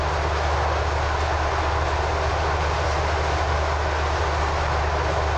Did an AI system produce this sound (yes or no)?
no